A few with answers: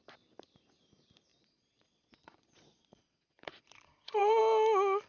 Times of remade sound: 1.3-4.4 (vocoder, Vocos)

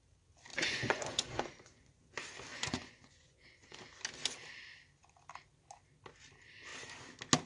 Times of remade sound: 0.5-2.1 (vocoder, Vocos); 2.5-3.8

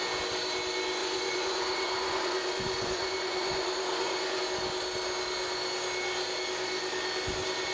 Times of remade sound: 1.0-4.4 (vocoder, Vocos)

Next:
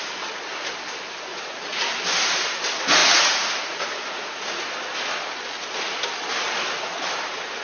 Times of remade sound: 1.3-1.9 (vocoder, Vocos); 3.0-4.6